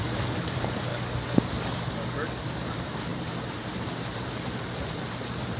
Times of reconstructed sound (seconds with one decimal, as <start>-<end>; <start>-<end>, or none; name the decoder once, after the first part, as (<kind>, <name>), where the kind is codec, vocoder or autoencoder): 0.0-0.9 (vocoder, BigVGAN v2); 2.4-5.6